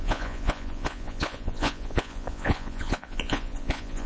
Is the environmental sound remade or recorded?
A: remade